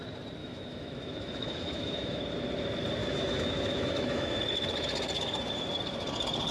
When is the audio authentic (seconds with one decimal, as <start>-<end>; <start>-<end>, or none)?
0.0-0.4; 2.2-3.0; 4.4-6.5